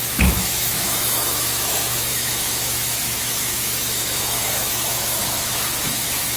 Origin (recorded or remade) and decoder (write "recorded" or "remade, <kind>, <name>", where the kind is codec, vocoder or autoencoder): remade, autoencoder, DAC-VAE